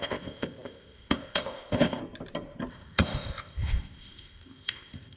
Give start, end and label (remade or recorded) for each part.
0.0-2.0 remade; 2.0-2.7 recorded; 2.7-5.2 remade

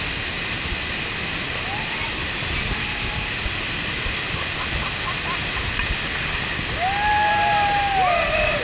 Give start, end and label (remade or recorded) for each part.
0.0-2.7 recorded; 2.7-3.3 remade; 3.3-8.6 recorded

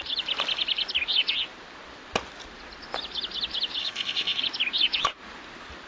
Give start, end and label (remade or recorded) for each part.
0.0-3.8 recorded; 3.8-4.4 remade; 4.4-5.9 recorded